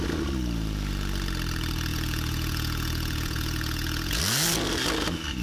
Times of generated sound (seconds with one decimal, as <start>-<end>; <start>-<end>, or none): 1.9-4.2